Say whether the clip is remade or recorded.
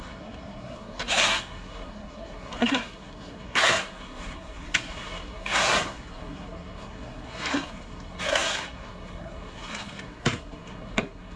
remade